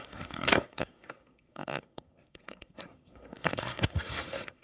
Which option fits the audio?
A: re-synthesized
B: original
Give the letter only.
A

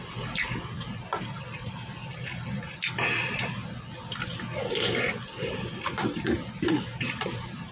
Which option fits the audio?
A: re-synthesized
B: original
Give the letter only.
B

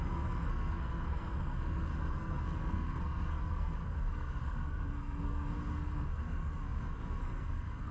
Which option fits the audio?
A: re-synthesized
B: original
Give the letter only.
A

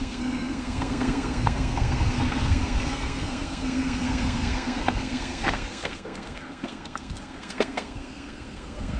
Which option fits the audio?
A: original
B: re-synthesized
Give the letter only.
B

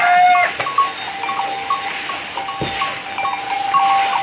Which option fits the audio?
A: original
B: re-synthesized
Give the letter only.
A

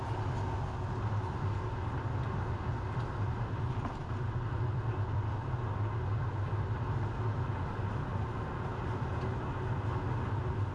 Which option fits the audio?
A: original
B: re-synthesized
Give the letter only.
A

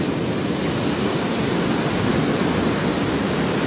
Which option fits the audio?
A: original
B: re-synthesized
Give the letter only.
A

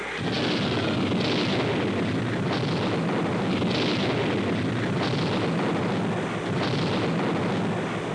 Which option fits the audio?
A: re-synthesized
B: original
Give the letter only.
B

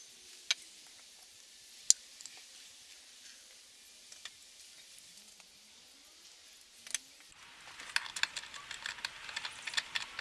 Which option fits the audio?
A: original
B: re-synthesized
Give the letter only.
A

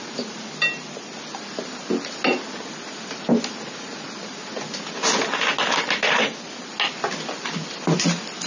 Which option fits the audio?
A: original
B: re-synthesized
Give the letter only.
A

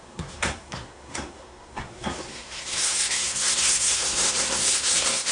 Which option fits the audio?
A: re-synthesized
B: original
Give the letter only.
A